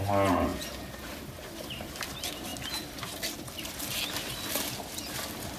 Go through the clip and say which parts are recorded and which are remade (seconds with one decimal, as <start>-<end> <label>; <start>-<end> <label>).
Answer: 0.0-0.5 recorded; 0.5-1.2 remade; 1.2-5.6 recorded